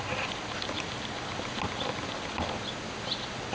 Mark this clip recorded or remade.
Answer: recorded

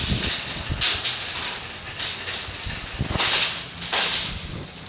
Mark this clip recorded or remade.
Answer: recorded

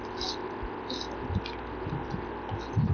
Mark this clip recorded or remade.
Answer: recorded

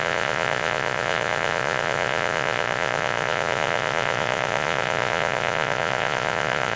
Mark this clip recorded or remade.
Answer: remade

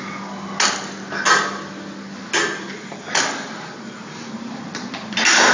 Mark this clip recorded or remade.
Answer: recorded